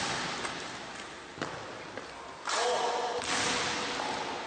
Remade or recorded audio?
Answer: recorded